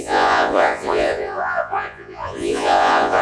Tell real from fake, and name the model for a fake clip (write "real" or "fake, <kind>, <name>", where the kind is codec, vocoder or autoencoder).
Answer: fake, vocoder, Vocos